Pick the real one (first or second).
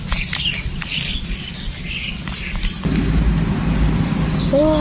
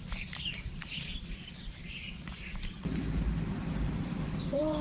first